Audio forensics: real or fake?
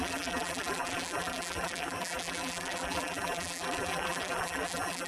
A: fake